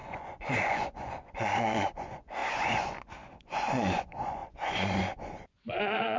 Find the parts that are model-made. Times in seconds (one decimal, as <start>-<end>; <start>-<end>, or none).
0.0-6.2